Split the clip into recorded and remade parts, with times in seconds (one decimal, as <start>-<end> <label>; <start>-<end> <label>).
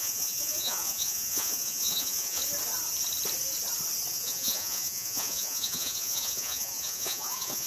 0.0-2.4 remade; 2.4-4.1 recorded; 4.1-7.7 remade